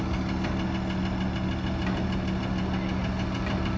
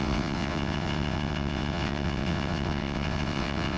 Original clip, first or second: first